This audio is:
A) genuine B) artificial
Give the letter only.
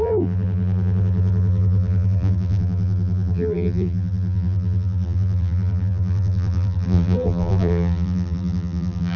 B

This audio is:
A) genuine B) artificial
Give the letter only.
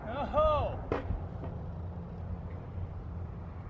A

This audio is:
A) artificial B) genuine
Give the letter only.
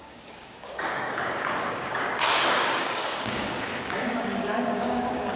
A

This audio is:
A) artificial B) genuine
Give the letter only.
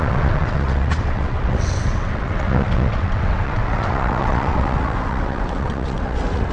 A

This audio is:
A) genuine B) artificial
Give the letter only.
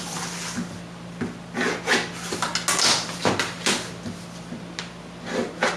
A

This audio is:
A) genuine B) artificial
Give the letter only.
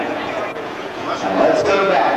B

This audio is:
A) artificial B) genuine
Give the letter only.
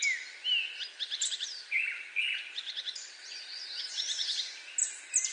B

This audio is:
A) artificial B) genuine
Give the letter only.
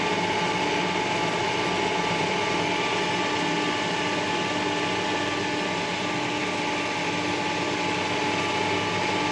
B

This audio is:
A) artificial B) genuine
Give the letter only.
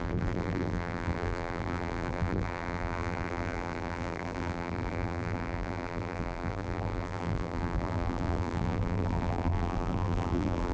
A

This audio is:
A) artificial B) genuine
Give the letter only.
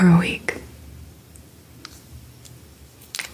B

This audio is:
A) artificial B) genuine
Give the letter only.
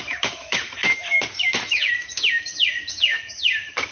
A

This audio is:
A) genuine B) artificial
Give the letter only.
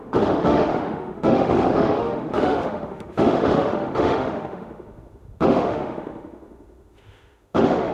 B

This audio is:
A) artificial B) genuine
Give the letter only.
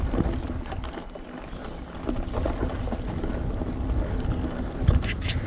B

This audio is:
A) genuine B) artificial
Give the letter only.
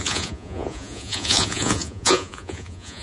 B